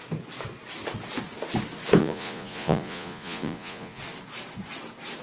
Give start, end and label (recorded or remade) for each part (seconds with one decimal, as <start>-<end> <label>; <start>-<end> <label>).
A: 0.0-2.0 recorded; 2.0-4.0 remade; 4.0-5.2 recorded